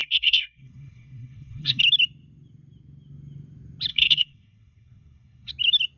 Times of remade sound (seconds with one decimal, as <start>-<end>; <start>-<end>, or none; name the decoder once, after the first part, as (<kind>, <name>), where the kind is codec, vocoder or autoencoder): 0.0-1.8 (codec, SNAC); 3.9-5.5

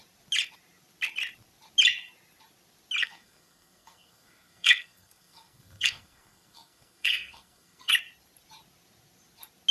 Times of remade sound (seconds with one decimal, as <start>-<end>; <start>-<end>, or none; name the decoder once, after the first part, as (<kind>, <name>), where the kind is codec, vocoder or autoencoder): 3.0-7.9 (codec, SNAC)